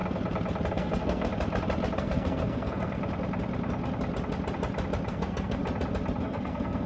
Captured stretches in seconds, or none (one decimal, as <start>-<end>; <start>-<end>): 0.0-0.7; 1.3-2.0; 3.0-5.1; 5.6-6.2